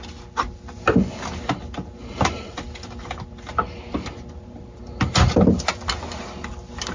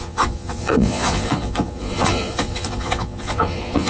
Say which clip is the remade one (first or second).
second